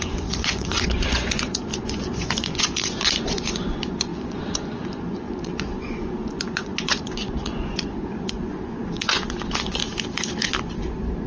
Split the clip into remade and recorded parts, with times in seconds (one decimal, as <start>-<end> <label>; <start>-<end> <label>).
0.0-9.8 remade; 9.8-11.3 recorded